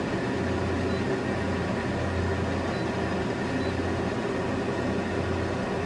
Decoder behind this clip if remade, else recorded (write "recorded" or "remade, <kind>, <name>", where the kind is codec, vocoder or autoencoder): recorded